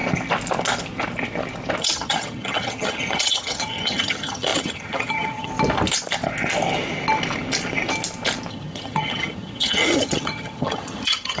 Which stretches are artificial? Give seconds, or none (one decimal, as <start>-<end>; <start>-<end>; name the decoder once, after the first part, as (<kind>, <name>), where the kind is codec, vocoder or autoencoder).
1.8-5.5 (vocoder, HiFi-GAN); 8.5-11.4